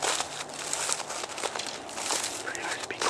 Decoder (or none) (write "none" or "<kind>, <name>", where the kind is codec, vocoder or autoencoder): none